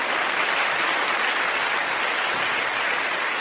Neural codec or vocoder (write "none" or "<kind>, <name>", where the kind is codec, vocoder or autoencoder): none